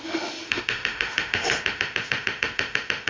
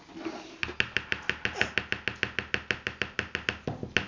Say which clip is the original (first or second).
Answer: second